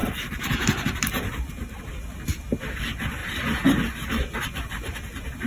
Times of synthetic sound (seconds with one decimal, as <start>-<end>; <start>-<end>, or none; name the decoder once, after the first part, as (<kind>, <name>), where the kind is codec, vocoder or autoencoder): 0.0-1.8 (vocoder, BigVGAN v2)